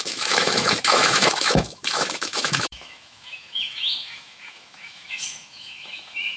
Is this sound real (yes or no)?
no